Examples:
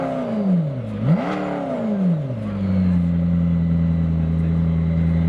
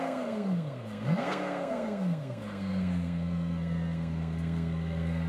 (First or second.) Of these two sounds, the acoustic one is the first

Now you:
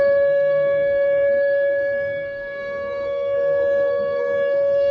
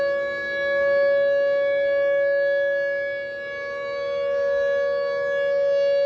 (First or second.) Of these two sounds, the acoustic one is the second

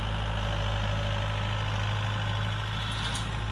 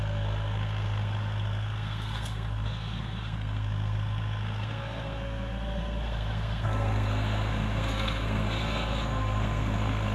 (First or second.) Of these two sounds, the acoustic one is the first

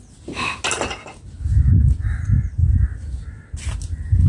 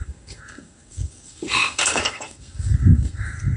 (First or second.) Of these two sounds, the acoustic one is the first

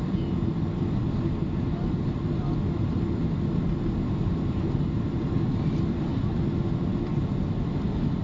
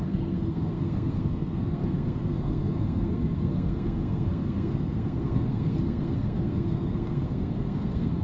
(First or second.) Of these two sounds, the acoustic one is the first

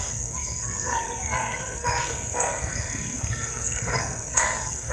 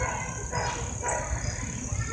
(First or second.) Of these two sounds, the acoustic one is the second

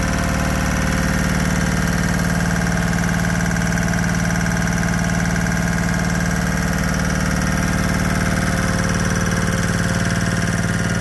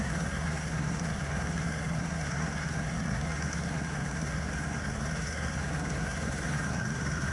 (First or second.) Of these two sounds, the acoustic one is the first